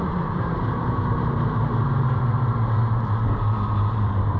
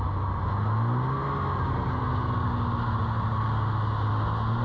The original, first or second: second